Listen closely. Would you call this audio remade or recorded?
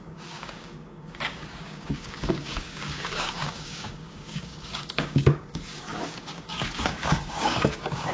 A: remade